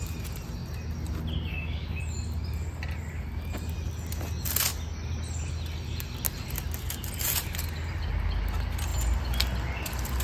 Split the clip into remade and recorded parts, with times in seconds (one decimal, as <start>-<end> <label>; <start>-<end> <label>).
0.0-1.5 recorded; 1.5-2.0 remade; 2.0-10.2 recorded